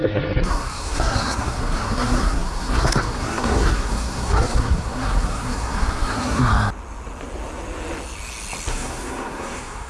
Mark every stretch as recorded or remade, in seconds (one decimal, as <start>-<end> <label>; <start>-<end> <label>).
0.0-6.5 remade; 6.5-8.7 recorded; 8.7-9.9 remade